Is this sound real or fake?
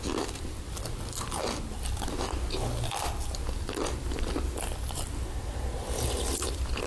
real